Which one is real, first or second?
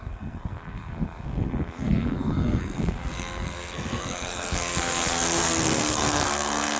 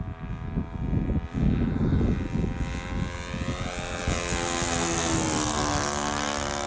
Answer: second